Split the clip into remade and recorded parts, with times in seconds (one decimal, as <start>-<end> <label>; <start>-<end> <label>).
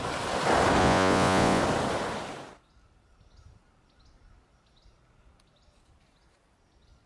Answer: 0.0-0.8 recorded; 0.8-1.6 remade; 1.6-7.1 recorded